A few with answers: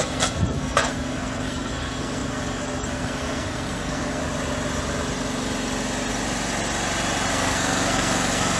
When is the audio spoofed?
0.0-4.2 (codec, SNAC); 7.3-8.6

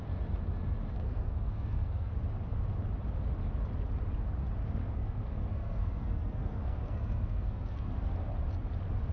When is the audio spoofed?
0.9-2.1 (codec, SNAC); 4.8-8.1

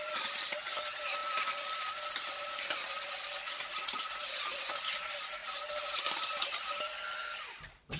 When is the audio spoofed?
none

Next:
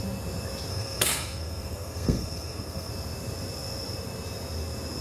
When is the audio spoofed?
0.7-2.9 (codec, SNAC)

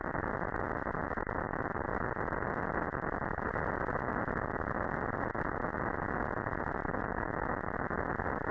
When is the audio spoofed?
none